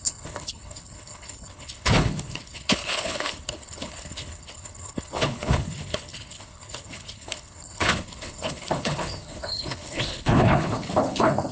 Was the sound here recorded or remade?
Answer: remade